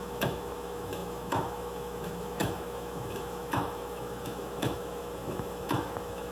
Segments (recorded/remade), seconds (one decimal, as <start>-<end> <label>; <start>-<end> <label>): 0.0-6.3 remade